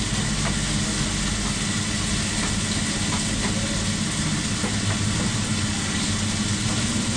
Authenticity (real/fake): real